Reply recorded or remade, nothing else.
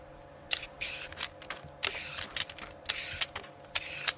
recorded